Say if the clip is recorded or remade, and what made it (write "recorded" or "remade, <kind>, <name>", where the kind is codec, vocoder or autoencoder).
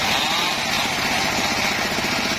recorded